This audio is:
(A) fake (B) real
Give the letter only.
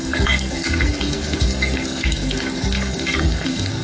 A